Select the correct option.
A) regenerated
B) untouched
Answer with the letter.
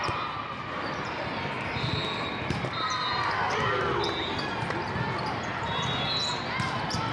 B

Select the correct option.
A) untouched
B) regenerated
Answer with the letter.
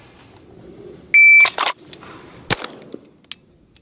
A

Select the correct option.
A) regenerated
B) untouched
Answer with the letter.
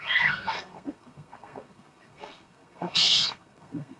A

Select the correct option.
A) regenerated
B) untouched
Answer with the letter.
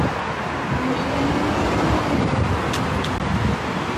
B